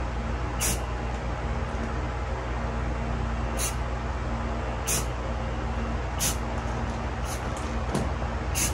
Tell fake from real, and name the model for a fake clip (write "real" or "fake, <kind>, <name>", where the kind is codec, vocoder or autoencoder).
real